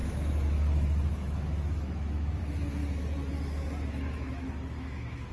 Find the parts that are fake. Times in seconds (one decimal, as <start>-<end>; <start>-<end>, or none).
0.0-2.8; 3.9-5.3